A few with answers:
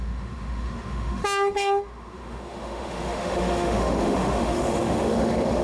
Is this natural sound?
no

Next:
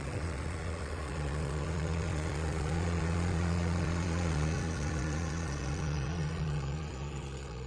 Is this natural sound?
no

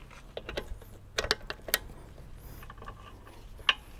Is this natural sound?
yes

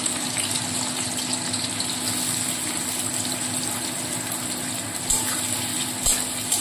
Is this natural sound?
yes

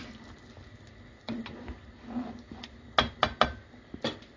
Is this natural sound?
yes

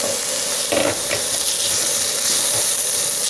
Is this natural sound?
yes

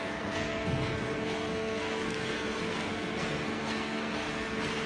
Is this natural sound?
no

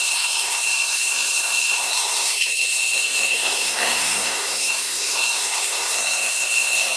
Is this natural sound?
no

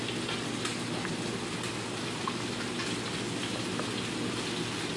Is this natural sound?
yes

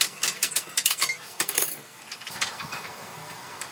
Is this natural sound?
no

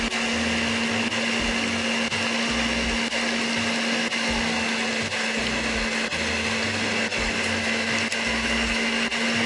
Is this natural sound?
yes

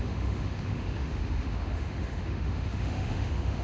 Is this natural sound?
no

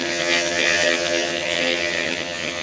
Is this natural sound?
no